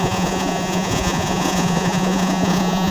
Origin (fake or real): fake